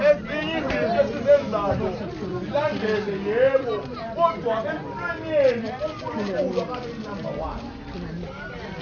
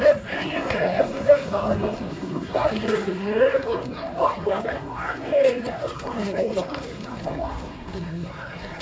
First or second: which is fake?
second